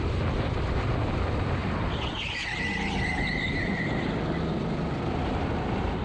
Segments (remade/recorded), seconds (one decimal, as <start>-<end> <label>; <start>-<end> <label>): 0.0-6.0 recorded